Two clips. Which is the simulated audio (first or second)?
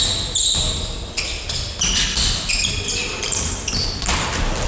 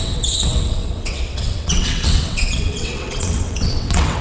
second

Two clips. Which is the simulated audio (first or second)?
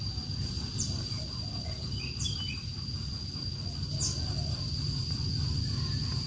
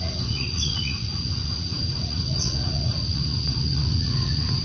second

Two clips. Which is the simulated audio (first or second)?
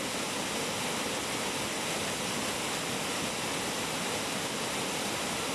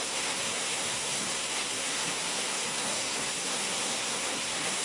second